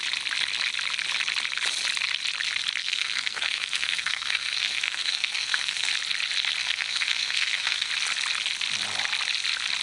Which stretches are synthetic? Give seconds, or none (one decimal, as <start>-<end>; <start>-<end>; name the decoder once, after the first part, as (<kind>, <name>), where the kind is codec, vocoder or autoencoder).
2.8-5.9 (codec, SNAC); 6.6-7.9